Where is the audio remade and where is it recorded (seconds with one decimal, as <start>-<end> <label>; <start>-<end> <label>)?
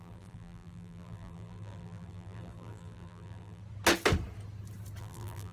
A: 0.0-3.6 remade; 3.6-5.0 recorded; 5.0-5.5 remade